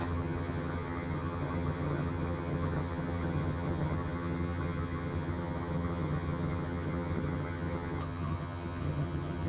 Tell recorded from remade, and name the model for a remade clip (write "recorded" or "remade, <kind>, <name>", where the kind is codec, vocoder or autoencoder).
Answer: remade, vocoder, HiFi-GAN